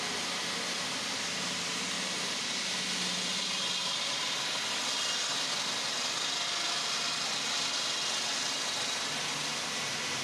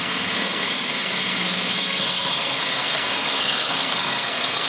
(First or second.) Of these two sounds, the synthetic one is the second